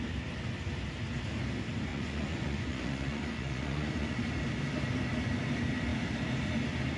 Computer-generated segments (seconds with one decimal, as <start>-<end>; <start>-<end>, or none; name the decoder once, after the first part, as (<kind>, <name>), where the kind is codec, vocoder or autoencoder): 1.9-4.2 (vocoder, Vocos)